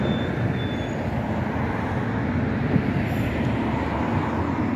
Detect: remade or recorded recorded